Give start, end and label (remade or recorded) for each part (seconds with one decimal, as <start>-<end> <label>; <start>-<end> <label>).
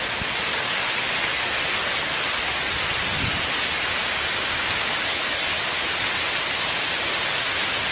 0.0-4.0 recorded; 4.0-4.9 remade; 4.9-7.9 recorded